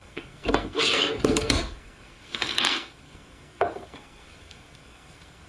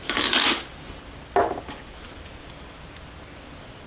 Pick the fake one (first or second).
first